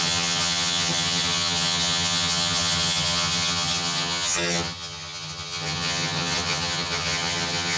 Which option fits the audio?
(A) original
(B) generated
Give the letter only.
B